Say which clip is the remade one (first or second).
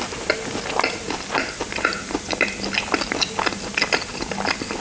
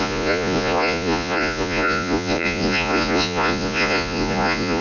second